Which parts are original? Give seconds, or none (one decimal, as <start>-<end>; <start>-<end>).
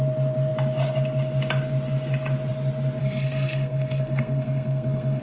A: 0.0-3.0